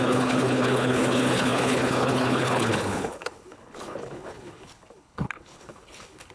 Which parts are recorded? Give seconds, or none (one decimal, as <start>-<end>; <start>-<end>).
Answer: none